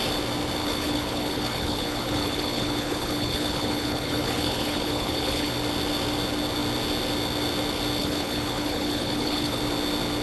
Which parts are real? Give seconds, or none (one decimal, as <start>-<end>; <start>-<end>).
0.0-0.6; 5.5-8.0; 9.6-10.2